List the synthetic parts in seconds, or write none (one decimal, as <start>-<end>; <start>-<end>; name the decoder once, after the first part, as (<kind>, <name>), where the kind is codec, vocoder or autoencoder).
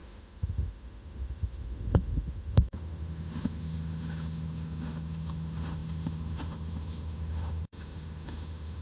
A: 0.0-8.8 (autoencoder, DAC-VAE)